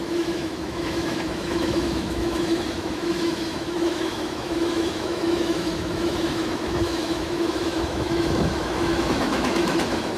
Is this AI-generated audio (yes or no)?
yes